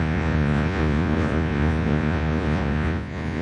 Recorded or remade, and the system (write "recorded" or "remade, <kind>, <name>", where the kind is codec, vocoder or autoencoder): remade, vocoder, Vocos